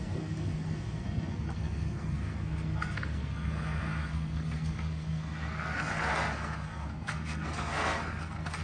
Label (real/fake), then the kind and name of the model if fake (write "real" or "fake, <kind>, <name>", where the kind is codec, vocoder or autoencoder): fake, codec, SNAC